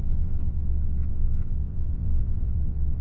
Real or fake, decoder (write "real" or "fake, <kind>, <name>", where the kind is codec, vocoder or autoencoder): fake, vocoder, WaveNeXt